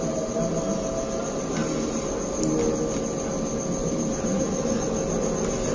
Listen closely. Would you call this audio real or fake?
real